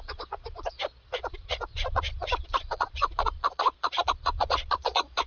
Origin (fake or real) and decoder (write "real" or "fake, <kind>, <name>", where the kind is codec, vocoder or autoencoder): fake, vocoder, Vocos